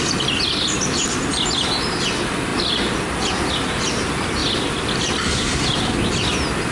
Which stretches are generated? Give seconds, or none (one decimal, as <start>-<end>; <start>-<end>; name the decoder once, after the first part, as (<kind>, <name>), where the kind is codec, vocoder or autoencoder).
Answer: none

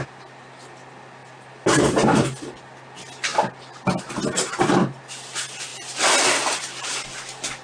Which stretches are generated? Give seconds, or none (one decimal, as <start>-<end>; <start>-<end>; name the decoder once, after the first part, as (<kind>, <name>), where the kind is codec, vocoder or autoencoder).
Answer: 1.2-2.4 (vocoder, BigVGAN v2); 3.3-4.0; 5.7-6.6

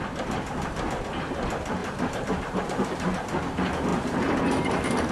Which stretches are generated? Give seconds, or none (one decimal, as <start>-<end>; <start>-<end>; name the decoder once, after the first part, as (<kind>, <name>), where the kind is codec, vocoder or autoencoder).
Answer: 1.8-2.6 (vocoder, BigVGAN v2)

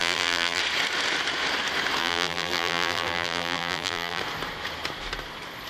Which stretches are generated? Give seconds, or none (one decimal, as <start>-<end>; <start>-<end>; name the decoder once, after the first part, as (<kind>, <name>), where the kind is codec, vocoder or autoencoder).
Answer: 0.0-0.6 (vocoder, BigVGAN v2); 2.0-4.2

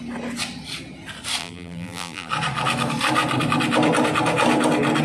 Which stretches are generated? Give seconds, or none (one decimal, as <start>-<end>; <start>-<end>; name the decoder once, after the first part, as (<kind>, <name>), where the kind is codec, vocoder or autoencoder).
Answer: 1.4-2.3 (vocoder, BigVGAN v2)

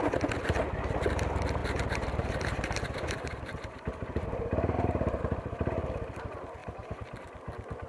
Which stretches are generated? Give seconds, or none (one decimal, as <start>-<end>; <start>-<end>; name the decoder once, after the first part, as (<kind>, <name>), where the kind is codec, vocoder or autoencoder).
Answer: 1.6-5.2 (vocoder, BigVGAN v2); 6.6-7.3

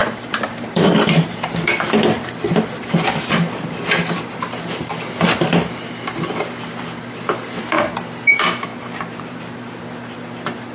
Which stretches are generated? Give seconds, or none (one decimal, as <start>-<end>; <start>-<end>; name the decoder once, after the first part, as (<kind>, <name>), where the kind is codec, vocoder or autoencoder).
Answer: 0.0-1.5 (vocoder, BigVGAN v2); 8.7-9.8

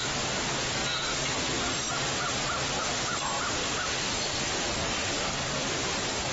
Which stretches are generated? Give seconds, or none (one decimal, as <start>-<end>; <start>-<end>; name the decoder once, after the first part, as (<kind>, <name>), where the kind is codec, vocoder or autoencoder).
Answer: 5.3-6.3 (vocoder, BigVGAN v2)